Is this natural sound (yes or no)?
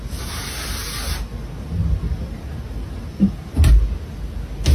yes